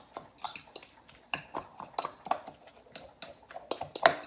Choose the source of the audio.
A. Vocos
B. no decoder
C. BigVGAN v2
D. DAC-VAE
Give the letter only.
B